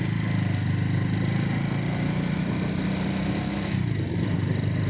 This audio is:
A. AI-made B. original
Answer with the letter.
B